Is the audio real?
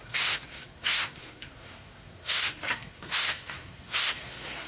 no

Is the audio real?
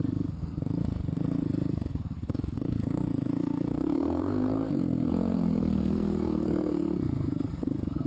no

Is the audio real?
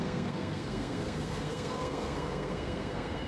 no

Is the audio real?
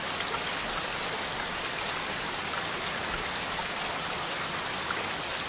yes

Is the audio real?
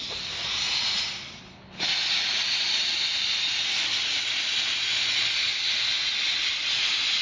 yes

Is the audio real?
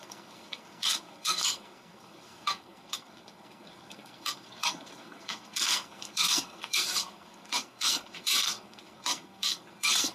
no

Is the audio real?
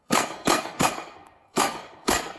no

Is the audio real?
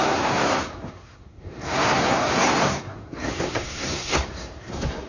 no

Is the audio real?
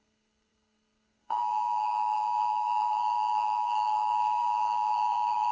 no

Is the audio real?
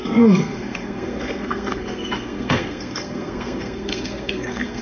no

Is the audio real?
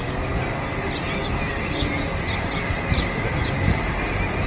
yes